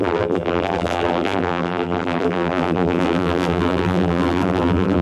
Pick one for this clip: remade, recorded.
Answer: remade